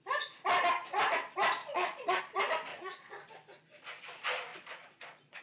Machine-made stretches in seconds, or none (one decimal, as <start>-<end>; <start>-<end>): 1.6-2.2; 2.7-3.3; 4.5-5.4